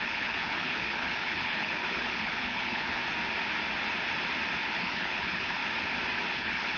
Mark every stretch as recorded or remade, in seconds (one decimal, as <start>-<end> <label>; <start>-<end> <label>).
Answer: 0.0-3.0 remade; 3.0-4.6 recorded; 4.6-5.6 remade; 5.6-6.3 recorded; 6.3-6.8 remade